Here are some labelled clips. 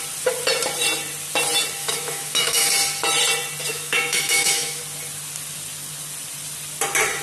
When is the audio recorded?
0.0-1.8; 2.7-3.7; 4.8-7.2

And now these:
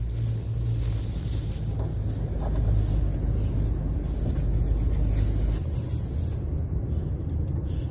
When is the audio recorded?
0.0-7.9